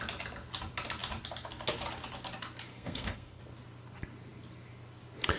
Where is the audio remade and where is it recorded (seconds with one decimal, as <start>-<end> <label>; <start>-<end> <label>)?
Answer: 0.0-2.7 recorded; 2.7-3.4 remade; 3.4-5.4 recorded